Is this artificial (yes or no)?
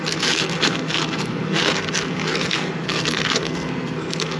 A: yes